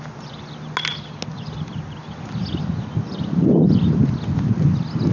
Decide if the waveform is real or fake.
real